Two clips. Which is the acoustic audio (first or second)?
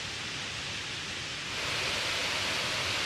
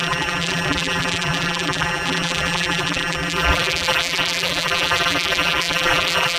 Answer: first